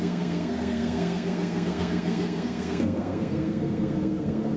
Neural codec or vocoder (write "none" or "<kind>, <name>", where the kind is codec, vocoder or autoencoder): codec, SNAC